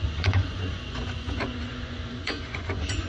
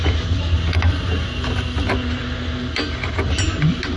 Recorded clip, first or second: second